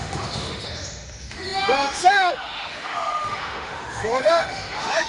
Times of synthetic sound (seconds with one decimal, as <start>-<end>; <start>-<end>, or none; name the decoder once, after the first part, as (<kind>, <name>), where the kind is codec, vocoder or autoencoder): 0.0-5.1 (autoencoder, DAC-VAE)